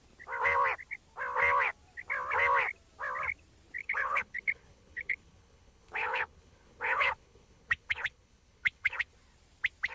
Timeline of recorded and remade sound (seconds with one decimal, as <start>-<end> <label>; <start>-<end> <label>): 0.0-3.8 recorded; 3.8-9.1 remade; 9.1-9.9 recorded